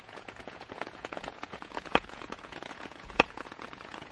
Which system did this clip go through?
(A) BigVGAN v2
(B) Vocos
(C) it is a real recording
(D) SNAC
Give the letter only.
B